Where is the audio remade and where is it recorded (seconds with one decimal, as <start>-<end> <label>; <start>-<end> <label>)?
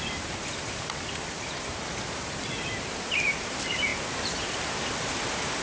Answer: 0.0-5.6 recorded